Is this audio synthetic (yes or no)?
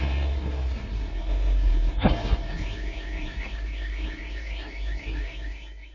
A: yes